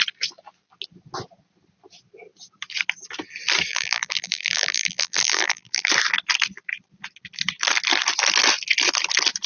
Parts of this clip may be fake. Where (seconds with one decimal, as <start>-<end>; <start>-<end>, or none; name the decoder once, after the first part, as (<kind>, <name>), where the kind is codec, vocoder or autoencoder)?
3.7-5.9 (vocoder, BigVGAN v2)